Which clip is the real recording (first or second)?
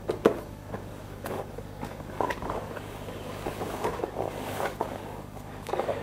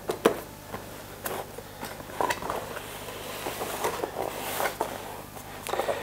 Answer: second